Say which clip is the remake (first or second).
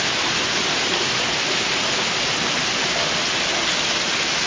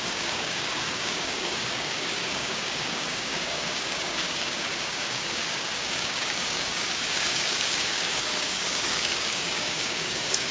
second